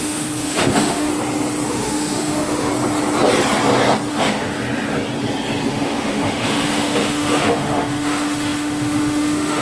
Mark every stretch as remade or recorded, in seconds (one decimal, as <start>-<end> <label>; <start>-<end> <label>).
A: 0.0-1.1 remade; 1.1-1.7 recorded; 1.7-2.7 remade; 2.7-4.1 recorded; 4.1-4.5 remade; 4.5-5.7 recorded; 5.7-9.6 remade